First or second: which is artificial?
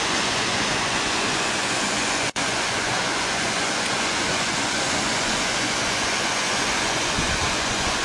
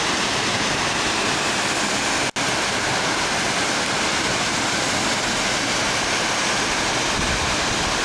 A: first